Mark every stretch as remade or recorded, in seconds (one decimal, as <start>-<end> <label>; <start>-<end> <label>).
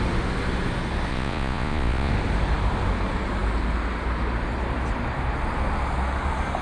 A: 0.0-1.1 recorded; 1.1-2.1 remade; 2.1-6.6 recorded